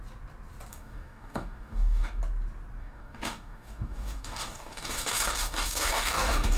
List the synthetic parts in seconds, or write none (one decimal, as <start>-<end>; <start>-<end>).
0.7-2.2; 2.8-6.6